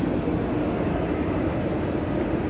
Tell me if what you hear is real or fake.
real